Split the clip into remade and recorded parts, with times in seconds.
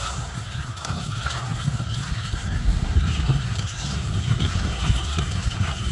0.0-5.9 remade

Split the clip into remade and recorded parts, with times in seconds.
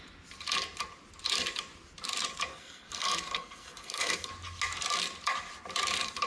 0.0-2.5 recorded; 2.5-4.3 remade; 4.3-6.3 recorded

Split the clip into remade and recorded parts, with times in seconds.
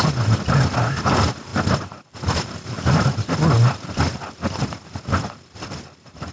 0.0-6.3 recorded